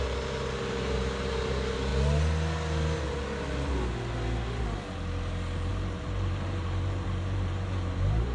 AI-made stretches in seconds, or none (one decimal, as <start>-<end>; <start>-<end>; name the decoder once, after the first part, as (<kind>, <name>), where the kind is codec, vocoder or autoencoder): 0.0-1.9 (vocoder, BigVGAN v2); 5.7-8.3

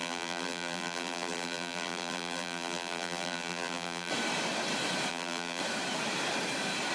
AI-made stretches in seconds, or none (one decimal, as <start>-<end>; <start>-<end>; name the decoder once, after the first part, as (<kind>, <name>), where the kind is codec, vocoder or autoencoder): 0.0-4.1 (vocoder, BigVGAN v2); 5.1-5.6

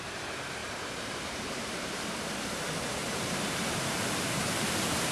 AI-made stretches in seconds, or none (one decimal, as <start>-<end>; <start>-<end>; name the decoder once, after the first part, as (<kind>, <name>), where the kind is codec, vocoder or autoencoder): 0.6-2.0 (vocoder, BigVGAN v2); 3.0-5.1

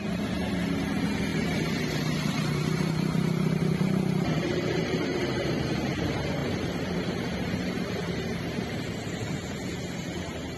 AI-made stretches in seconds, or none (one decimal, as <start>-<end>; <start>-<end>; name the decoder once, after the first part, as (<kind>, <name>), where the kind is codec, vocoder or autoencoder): 1.3-5.9 (vocoder, BigVGAN v2); 6.4-7.1

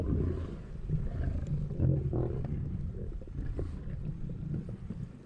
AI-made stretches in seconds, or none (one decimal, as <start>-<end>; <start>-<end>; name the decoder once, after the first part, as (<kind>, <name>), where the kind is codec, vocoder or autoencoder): none

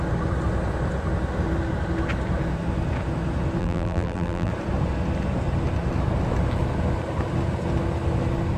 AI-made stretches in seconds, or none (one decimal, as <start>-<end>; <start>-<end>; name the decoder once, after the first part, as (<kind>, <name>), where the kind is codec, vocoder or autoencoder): 3.6-4.5 (vocoder, BigVGAN v2)

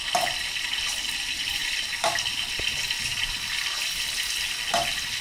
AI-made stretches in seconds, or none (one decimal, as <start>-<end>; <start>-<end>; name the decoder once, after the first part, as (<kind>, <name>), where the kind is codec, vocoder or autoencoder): none

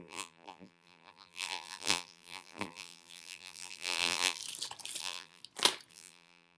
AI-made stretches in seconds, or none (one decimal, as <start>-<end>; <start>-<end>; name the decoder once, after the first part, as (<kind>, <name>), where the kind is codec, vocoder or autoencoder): 0.0-4.4 (vocoder, BigVGAN v2); 5.0-5.4; 5.9-6.6